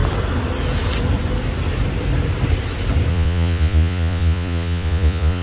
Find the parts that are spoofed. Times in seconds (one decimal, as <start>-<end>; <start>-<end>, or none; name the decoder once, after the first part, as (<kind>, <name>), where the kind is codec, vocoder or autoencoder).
3.1-5.4 (vocoder, Vocos)